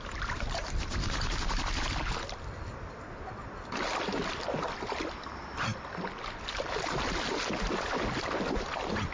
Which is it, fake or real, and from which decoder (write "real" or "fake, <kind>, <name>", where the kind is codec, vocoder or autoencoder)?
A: real